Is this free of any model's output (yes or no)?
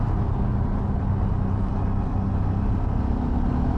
yes